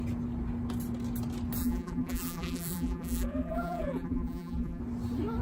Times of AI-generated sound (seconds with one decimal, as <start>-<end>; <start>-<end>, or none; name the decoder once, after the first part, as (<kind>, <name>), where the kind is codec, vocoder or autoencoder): 1.6-4.8 (vocoder, BigVGAN v2)